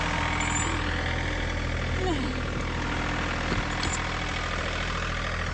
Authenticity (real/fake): real